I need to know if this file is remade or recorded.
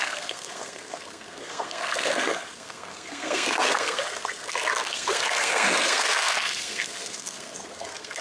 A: remade